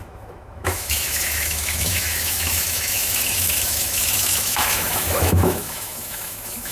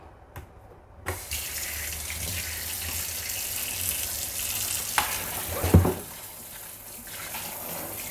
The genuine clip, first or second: second